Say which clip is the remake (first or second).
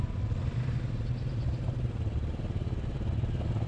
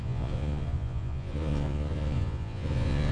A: second